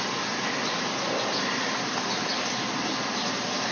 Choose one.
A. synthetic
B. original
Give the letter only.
B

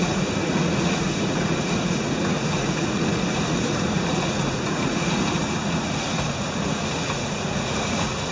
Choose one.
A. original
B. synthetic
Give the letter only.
B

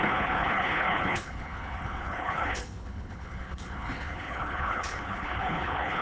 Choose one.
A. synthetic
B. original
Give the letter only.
A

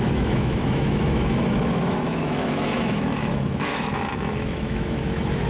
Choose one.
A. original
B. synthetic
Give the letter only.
B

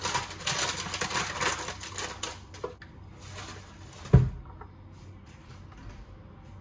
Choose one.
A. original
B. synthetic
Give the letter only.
A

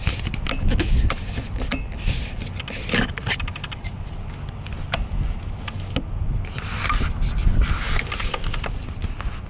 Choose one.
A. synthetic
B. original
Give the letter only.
B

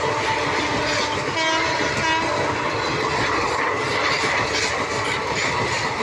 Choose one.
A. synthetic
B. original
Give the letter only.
B